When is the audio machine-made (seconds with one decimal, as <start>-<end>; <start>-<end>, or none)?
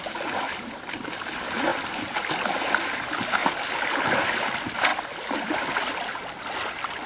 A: none